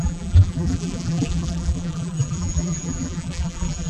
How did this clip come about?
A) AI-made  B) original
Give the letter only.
A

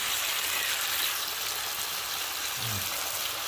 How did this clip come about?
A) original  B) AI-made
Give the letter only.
A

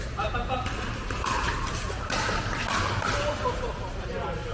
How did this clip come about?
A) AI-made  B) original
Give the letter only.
B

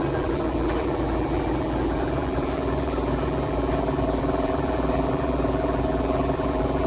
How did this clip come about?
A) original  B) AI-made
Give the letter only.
B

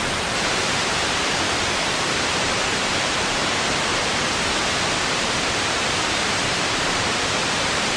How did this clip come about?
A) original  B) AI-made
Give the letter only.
B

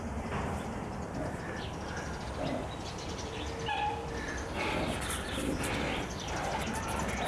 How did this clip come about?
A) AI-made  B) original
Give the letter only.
A